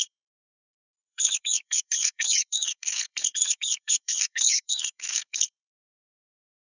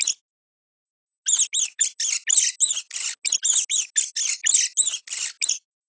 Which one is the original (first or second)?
second